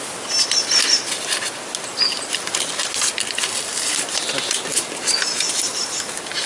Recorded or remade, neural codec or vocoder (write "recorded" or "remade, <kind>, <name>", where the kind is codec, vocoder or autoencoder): recorded